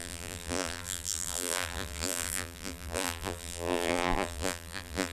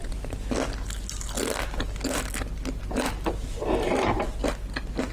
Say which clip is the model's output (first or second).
first